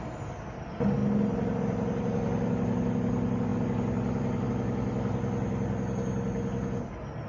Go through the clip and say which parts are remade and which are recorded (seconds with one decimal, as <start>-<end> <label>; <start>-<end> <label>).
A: 0.0-7.3 recorded